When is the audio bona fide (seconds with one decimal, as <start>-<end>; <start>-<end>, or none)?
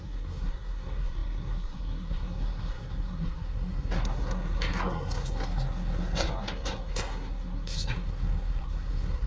none